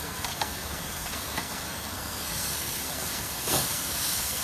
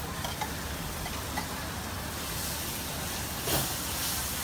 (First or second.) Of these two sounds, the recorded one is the second